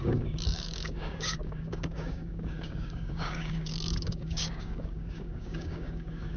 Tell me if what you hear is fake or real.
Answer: fake